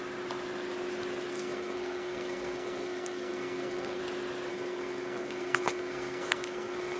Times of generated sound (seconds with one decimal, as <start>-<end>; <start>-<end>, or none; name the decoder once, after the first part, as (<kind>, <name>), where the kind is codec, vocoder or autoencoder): 1.3-4.0 (codec, SNAC); 4.5-7.0